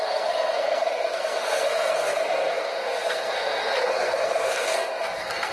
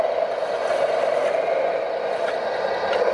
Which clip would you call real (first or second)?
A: second